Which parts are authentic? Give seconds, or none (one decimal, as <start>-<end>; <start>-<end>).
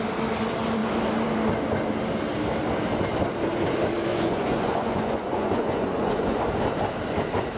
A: 0.0-4.1; 6.4-7.6